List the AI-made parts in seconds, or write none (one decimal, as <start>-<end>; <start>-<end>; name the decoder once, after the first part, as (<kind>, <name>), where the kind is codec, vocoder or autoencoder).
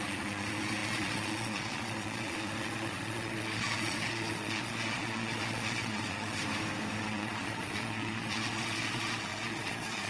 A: 0.0-6.4 (vocoder, Vocos); 7.0-10.1